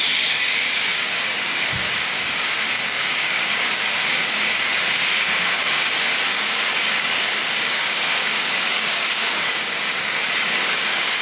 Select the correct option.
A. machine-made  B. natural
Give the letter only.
A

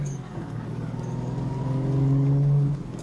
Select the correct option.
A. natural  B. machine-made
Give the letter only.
B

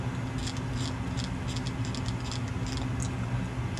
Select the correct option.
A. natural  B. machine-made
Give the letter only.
A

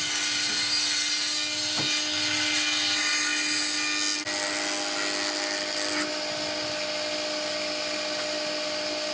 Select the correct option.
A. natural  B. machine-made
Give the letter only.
A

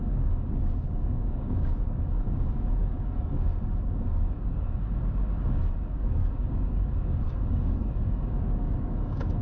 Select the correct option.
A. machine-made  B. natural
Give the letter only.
A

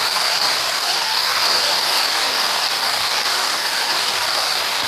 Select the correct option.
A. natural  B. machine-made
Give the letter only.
B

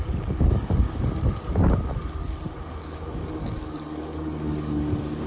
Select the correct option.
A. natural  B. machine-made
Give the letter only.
B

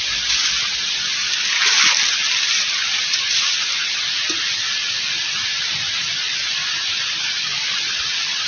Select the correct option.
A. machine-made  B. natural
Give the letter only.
B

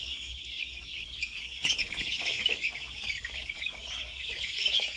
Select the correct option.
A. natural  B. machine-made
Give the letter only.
B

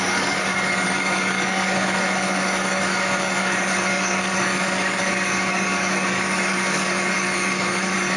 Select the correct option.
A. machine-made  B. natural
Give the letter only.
A